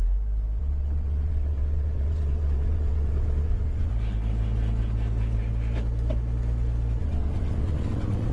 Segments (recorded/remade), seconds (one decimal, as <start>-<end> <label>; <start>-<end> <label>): 0.0-0.6 recorded; 0.6-3.9 remade; 3.9-7.0 recorded; 7.0-8.3 remade